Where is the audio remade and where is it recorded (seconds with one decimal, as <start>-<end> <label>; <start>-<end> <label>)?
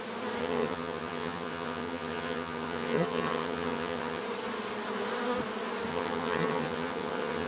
0.0-0.4 recorded; 0.4-4.2 remade; 4.2-5.9 recorded; 5.9-7.5 remade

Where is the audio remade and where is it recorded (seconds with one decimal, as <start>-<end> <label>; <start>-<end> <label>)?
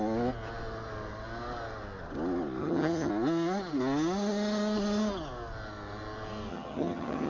0.0-2.6 recorded; 2.6-3.1 remade; 3.1-6.5 recorded; 6.5-7.3 remade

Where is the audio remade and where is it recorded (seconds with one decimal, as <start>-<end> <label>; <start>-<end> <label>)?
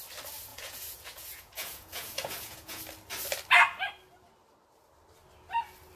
0.0-0.5 recorded; 0.5-2.8 remade; 2.8-6.0 recorded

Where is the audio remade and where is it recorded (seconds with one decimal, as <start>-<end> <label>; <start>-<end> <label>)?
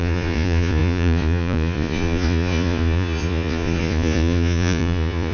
0.0-5.3 remade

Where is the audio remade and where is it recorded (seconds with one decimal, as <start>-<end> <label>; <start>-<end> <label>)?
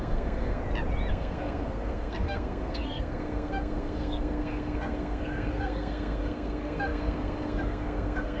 0.0-0.6 remade; 0.6-1.1 recorded; 1.1-8.4 remade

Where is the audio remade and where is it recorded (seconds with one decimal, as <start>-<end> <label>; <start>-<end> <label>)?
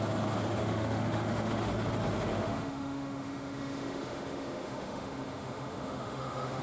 0.0-0.6 recorded; 0.6-1.7 remade; 1.7-2.3 recorded; 2.3-6.6 remade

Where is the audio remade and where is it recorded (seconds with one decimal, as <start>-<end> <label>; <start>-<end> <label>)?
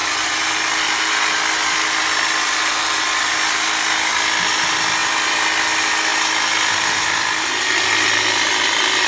0.0-9.1 recorded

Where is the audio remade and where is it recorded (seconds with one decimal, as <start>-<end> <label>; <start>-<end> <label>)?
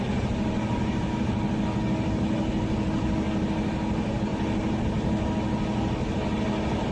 0.0-6.9 recorded